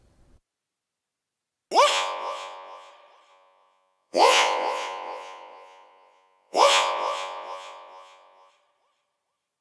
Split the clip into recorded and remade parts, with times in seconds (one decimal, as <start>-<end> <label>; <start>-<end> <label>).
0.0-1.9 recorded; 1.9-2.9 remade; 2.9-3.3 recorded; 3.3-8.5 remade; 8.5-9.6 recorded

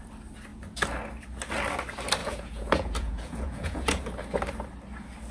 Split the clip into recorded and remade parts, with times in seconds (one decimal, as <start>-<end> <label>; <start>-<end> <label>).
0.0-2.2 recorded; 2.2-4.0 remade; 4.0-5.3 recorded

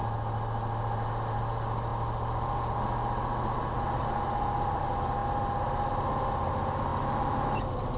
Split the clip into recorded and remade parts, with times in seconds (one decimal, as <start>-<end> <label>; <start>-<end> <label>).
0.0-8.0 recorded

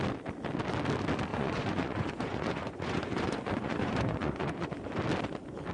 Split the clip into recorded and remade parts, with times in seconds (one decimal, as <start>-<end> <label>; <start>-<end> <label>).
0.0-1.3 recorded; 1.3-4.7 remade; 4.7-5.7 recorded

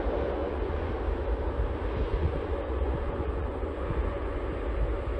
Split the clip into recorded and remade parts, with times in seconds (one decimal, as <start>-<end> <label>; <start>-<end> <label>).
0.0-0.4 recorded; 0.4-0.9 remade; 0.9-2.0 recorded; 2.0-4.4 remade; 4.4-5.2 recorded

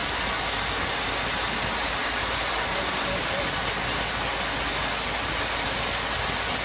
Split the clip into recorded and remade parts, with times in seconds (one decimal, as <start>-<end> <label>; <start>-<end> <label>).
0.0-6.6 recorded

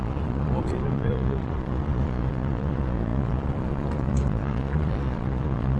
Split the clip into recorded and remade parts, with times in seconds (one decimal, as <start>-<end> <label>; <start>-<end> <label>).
0.0-5.8 remade

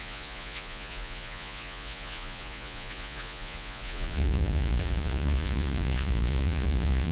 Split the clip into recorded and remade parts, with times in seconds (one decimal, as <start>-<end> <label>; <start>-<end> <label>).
0.0-7.1 remade